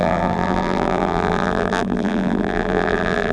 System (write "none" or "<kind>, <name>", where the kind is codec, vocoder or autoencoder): vocoder, BigVGAN v2